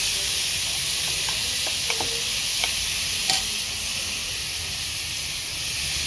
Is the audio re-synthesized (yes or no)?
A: no